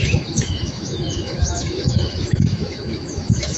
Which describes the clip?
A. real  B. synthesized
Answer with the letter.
B